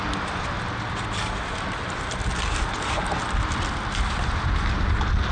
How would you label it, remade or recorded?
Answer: recorded